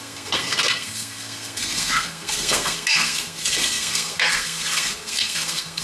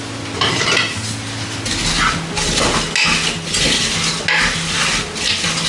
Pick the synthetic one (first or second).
first